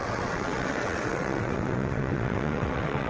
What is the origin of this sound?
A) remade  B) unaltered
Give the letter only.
A